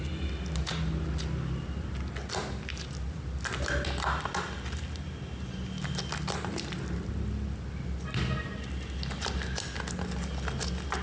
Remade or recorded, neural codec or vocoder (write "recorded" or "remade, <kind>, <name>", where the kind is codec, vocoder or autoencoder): recorded